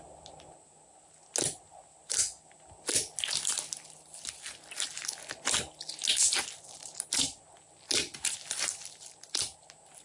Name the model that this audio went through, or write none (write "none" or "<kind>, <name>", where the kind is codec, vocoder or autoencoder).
none